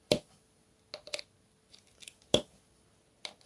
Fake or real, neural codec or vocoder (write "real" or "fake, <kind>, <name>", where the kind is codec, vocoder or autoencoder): real